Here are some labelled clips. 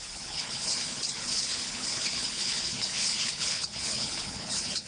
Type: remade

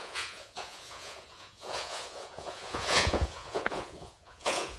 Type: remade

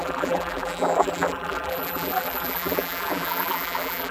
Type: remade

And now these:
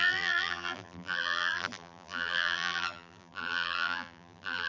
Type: remade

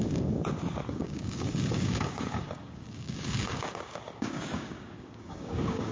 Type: remade